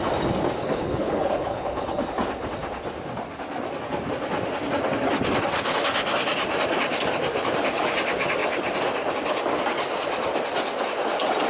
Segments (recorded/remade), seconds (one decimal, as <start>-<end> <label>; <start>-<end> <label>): 0.0-0.6 recorded; 0.6-2.0 remade; 2.0-11.5 recorded